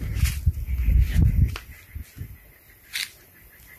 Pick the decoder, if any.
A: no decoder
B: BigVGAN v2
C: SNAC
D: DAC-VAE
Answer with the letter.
A